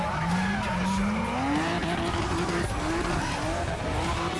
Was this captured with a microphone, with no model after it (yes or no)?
yes